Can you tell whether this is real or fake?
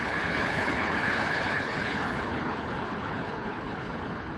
fake